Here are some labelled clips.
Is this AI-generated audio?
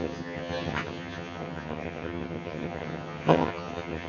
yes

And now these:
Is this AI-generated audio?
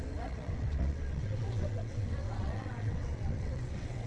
yes